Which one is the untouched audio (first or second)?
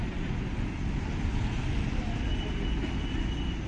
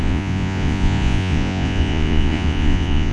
first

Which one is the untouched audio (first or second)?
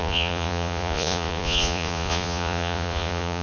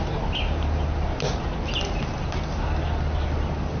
second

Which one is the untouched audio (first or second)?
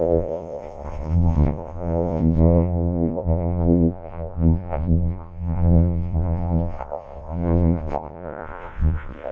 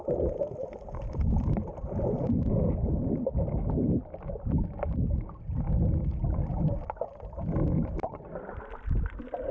second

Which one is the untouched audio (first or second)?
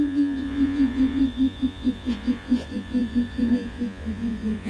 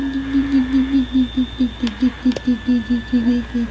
second